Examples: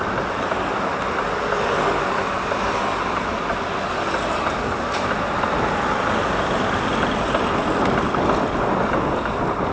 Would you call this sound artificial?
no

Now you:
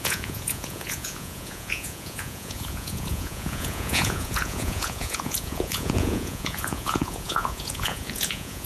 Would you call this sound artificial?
yes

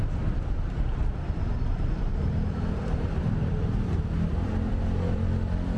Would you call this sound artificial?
yes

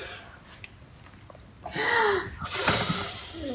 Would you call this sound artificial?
no